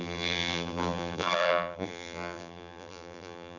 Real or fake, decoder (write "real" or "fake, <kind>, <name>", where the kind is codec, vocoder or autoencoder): fake, vocoder, BigVGAN v2